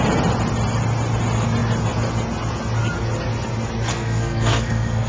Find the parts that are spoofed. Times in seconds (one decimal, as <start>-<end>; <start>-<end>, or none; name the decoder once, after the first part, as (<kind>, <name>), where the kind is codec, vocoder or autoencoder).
3.9-5.1 (codec, SNAC)